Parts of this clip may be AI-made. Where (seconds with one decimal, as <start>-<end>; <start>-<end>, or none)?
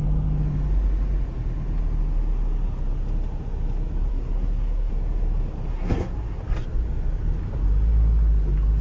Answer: 4.1-4.9; 5.7-6.4